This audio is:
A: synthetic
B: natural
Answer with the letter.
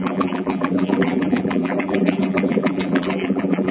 A